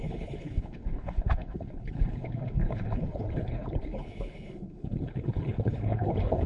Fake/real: fake